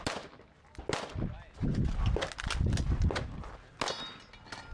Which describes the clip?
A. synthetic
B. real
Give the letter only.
B